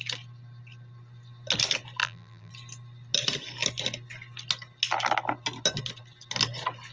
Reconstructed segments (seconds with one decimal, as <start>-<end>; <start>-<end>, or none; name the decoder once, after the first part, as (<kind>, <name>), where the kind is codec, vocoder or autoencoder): 2.0-2.5 (vocoder, BigVGAN v2)